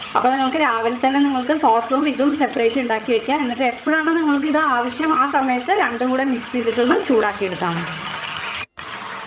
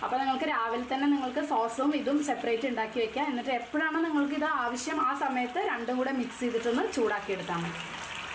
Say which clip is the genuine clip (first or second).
second